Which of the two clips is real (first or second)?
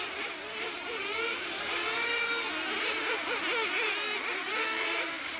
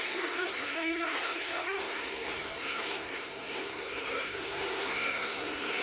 first